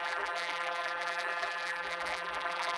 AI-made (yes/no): yes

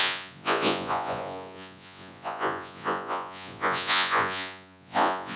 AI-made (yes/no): yes